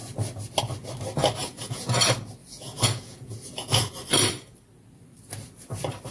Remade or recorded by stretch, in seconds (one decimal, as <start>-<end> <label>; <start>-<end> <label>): 0.0-1.4 recorded; 1.4-2.0 remade; 2.0-2.4 recorded; 2.4-3.8 remade; 3.8-6.1 recorded